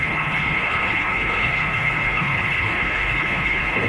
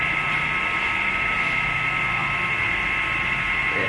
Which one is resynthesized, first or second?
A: first